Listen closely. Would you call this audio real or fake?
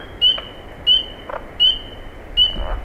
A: real